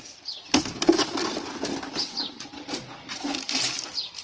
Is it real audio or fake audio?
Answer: real